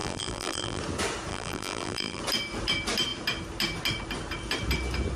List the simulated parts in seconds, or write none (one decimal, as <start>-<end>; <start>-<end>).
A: 0.0-0.8; 1.3-2.2